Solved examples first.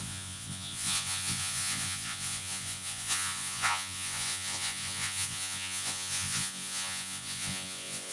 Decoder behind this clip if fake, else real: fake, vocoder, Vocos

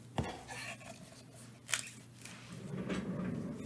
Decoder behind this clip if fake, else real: real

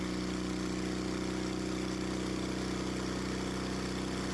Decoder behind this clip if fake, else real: real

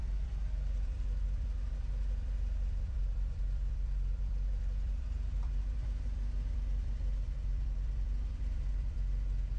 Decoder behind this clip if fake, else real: fake, vocoder, BigVGAN v2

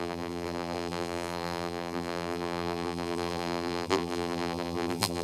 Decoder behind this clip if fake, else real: fake, vocoder, BigVGAN v2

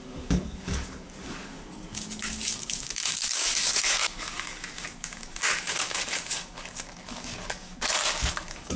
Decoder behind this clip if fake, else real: fake, codec, DAC